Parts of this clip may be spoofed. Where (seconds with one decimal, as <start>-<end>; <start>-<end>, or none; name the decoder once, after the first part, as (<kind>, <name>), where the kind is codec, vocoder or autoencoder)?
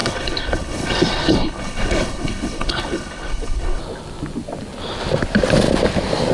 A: 0.0-3.8 (codec, HILCodec)